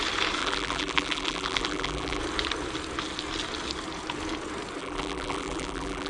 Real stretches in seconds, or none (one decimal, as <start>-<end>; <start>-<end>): 0.0-0.4; 2.2-4.8